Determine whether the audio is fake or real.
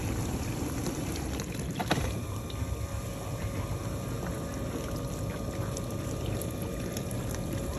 fake